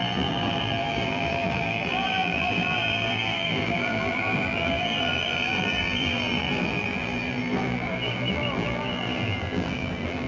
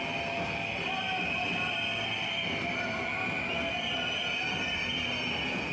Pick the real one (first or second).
second